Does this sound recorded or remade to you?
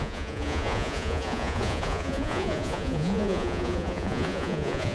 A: remade